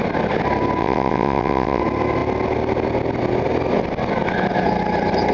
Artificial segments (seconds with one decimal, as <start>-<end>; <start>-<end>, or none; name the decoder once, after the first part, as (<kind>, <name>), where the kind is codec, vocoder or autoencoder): 0.8-1.8 (vocoder, WaveNeXt)